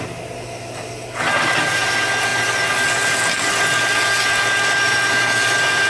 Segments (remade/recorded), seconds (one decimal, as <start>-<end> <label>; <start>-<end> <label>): 0.0-5.9 recorded